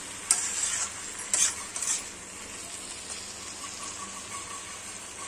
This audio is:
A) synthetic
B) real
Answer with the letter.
B